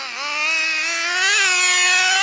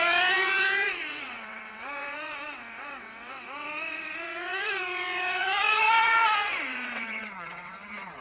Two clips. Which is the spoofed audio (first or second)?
second